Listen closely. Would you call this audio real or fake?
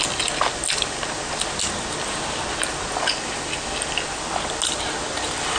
real